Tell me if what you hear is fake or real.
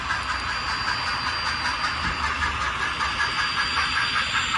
real